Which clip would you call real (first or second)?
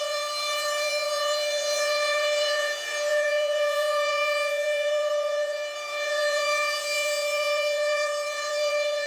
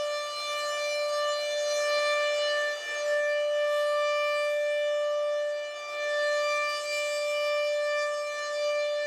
second